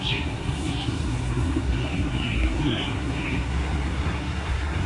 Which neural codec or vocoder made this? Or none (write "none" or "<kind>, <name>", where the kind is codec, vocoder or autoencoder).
codec, SNAC